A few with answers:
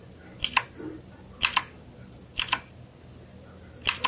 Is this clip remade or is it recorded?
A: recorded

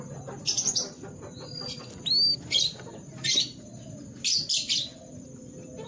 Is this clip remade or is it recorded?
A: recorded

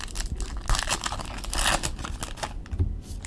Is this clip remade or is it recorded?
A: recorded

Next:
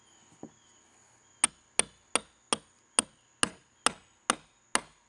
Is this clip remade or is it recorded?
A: recorded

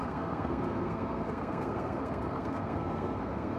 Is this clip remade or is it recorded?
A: remade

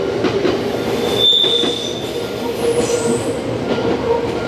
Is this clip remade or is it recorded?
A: recorded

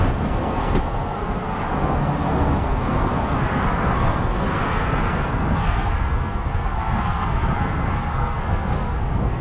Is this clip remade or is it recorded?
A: remade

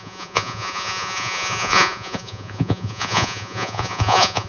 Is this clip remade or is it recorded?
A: remade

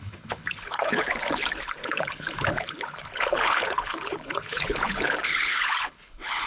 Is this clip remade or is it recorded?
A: remade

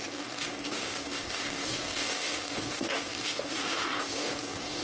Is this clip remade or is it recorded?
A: remade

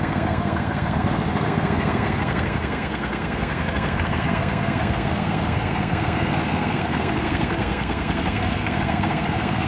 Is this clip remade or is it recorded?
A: remade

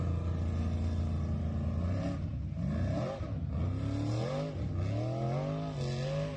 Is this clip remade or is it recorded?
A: recorded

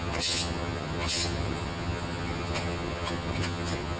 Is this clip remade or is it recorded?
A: remade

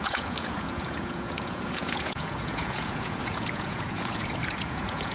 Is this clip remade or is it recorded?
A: remade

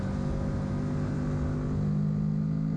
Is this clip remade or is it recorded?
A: recorded